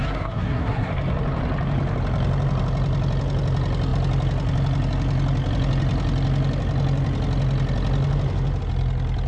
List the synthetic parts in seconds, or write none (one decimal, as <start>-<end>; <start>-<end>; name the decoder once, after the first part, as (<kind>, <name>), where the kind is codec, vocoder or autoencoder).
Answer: 0.0-0.9 (codec, SNAC)